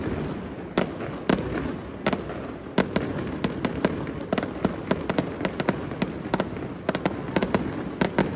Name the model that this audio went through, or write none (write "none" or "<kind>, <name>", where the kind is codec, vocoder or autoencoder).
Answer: none